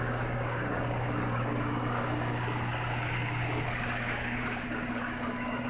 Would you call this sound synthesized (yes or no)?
yes